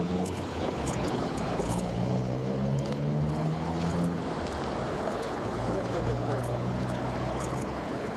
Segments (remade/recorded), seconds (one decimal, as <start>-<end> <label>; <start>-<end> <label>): 0.0-4.2 remade; 4.2-4.9 recorded; 4.9-8.2 remade